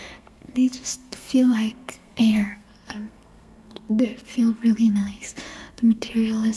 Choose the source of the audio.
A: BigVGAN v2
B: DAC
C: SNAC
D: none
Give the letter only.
C